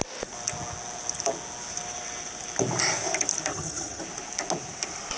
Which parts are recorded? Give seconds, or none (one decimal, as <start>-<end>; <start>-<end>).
0.0-3.5; 4.0-5.2